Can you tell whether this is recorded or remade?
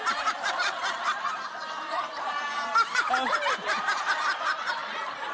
remade